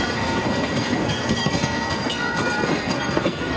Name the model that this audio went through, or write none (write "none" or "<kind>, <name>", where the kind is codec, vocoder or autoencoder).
codec, SNAC